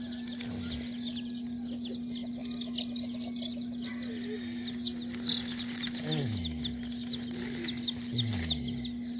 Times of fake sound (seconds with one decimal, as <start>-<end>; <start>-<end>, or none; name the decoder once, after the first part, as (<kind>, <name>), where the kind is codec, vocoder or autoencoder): none